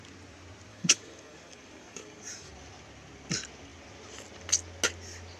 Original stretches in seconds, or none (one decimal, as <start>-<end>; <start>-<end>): 0.0-0.7; 2.5-5.4